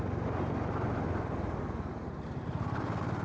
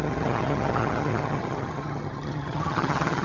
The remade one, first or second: second